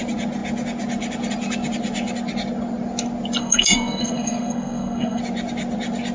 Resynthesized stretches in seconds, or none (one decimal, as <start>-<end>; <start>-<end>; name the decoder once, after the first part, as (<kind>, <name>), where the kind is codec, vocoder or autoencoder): 3.4-5.2 (codec, SNAC)